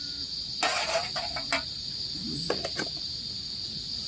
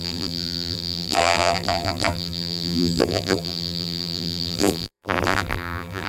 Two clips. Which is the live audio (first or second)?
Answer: first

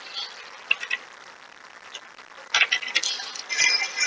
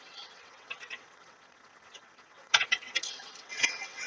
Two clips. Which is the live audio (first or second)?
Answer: first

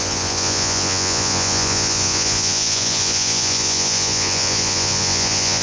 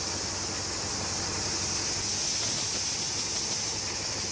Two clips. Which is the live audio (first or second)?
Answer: second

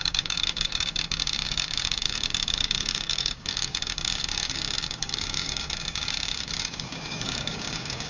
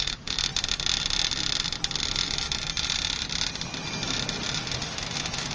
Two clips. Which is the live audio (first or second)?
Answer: second